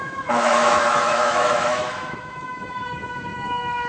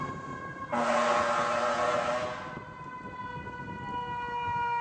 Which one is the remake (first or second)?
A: first